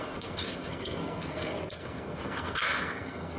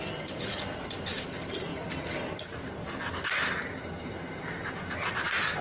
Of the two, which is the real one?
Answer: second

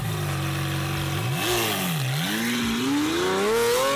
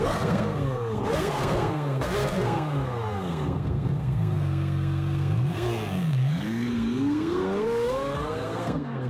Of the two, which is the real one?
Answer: first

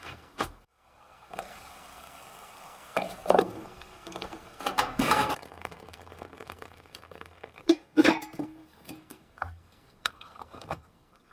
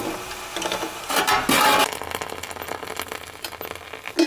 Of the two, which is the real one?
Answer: second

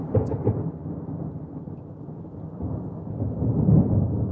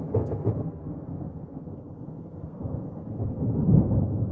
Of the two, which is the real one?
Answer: first